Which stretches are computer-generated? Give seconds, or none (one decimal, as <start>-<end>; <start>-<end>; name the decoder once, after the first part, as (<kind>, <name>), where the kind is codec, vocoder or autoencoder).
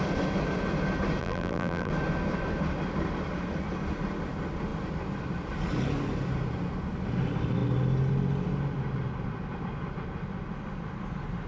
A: 1.2-1.9 (vocoder, BigVGAN v2)